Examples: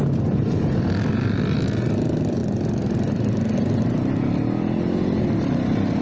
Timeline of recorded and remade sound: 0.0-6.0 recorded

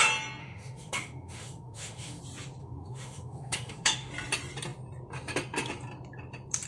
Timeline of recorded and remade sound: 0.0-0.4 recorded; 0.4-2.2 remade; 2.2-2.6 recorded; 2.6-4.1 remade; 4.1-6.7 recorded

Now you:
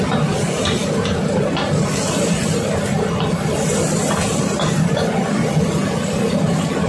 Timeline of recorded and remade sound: 0.0-6.9 recorded